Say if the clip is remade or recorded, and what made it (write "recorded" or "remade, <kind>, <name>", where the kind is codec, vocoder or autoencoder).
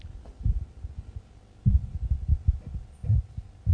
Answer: recorded